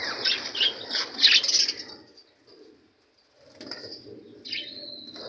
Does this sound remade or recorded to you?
recorded